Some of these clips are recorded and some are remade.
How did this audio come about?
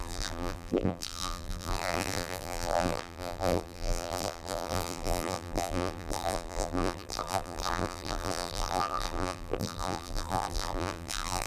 remade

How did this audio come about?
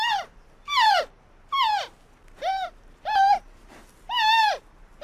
recorded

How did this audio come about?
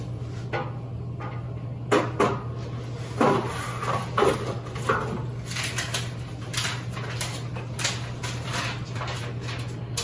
recorded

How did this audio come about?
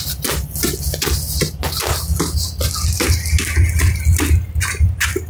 recorded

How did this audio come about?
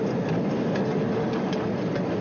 recorded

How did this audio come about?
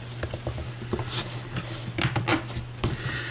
recorded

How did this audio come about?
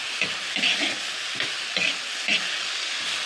recorded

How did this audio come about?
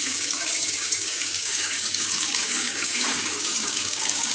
remade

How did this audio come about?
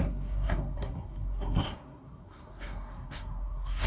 remade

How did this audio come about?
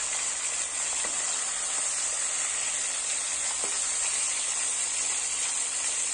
recorded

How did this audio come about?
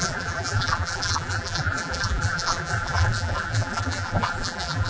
remade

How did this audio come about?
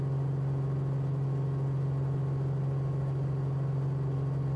recorded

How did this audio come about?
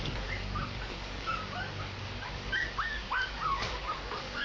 remade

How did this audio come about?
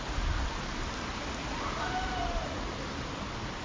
recorded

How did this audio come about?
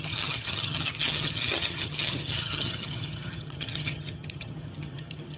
remade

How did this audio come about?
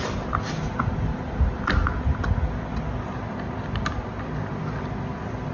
recorded